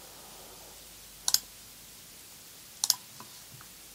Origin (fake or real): real